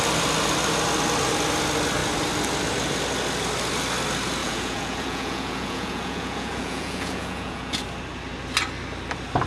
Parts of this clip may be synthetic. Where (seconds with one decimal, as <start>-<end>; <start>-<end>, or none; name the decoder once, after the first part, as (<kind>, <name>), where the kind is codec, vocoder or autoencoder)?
4.4-7.8 (vocoder, Vocos)